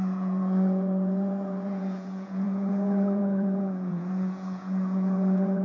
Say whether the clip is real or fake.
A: fake